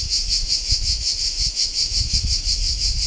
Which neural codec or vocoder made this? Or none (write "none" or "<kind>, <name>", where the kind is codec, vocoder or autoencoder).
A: autoencoder, DAC-VAE